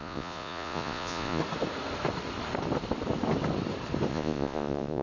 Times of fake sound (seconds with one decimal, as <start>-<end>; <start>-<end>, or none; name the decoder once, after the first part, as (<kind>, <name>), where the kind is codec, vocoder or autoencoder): 0.0-1.4 (vocoder, Vocos); 4.1-5.0